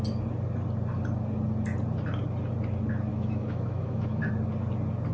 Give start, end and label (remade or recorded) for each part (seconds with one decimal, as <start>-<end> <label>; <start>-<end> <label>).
0.0-3.1 recorded; 3.1-4.3 remade; 4.3-5.1 recorded